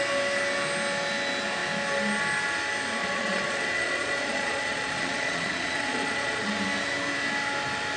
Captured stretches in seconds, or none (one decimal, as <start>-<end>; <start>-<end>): 0.0-3.0; 6.5-8.0

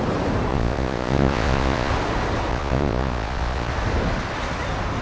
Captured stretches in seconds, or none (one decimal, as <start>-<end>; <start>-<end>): 0.0-0.5; 1.9-2.5; 3.7-5.0